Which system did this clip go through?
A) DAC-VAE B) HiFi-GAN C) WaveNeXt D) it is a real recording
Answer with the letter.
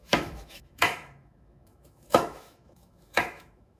A